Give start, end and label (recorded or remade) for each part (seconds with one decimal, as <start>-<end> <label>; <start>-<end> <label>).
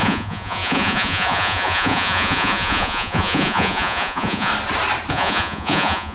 0.0-4.5 remade; 4.5-5.1 recorded; 5.1-6.1 remade